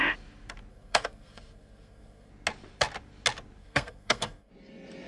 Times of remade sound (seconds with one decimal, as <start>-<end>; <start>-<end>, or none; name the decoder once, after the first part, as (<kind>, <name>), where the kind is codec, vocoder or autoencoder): 0.7-2.3 (codec, SNAC); 3.6-4.5